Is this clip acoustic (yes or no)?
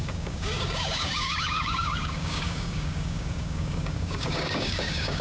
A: no